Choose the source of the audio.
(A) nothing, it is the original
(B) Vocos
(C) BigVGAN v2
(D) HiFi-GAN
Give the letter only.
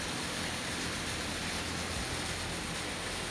A